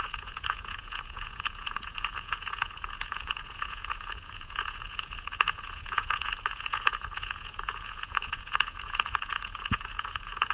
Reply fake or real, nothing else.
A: fake